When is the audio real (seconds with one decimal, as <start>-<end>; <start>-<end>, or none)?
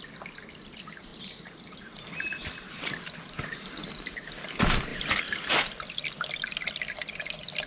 0.0-1.1; 4.3-4.9; 6.0-7.7